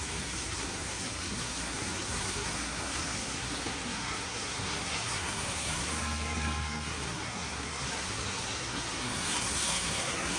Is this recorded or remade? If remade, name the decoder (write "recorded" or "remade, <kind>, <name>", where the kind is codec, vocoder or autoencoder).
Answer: remade, codec, SNAC